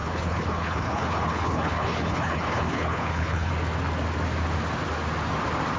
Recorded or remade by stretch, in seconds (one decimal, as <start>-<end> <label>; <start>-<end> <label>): 0.0-3.5 remade; 3.5-5.8 recorded